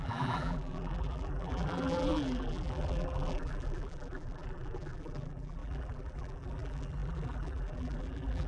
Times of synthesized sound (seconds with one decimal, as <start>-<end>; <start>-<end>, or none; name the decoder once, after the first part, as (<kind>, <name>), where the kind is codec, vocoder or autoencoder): 0.0-8.5 (vocoder, BigVGAN v2)

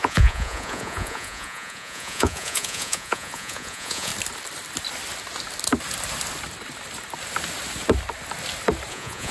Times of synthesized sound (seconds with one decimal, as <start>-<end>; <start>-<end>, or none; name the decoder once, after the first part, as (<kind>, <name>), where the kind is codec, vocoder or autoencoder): 0.0-4.1 (vocoder, Vocos); 8.9-9.3

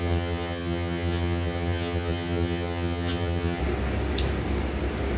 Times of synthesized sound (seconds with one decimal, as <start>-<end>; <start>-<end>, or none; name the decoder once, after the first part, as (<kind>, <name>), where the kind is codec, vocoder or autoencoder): 0.0-3.6 (vocoder, HiFi-GAN)

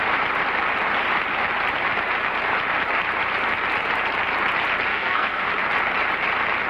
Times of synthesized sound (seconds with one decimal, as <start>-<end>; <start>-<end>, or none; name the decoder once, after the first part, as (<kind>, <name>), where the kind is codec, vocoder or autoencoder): 4.9-5.5 (codec, SNAC)

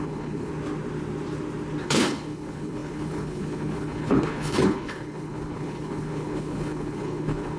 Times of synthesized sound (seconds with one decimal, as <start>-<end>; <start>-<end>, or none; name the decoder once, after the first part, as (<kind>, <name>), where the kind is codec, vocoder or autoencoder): 0.0-0.5 (codec, HILCodec); 1.8-7.6

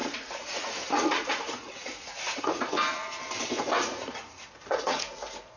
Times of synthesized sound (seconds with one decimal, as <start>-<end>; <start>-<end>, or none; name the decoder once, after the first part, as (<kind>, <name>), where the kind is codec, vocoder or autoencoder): 0.0-3.2 (vocoder, Vocos); 3.8-5.6

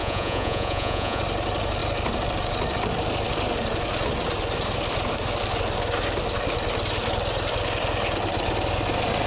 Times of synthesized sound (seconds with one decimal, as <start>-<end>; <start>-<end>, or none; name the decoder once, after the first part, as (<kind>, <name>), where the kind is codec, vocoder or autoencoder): 0.0-1.2 (vocoder, Vocos)

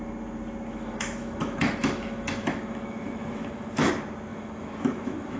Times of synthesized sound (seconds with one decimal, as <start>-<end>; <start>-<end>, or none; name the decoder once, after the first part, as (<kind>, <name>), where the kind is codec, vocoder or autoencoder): 0.7-3.9 (autoencoder, DAC-VAE); 4.3-5.4